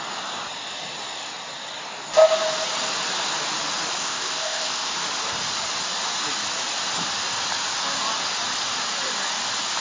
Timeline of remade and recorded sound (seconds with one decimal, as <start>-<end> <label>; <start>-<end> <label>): 0.0-4.0 recorded; 4.0-4.9 remade; 4.9-9.8 recorded